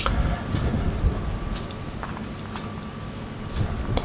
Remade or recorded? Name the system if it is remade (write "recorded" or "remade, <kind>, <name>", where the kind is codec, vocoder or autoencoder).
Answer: recorded